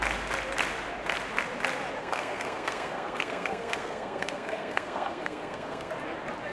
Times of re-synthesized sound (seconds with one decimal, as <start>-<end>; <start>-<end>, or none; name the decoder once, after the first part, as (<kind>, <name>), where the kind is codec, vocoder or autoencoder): 2.0-5.9 (codec, SNAC)